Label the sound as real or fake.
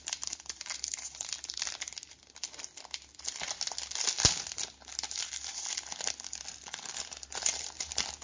real